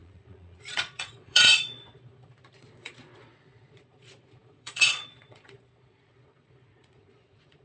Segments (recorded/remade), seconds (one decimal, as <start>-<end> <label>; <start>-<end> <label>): 0.0-7.6 remade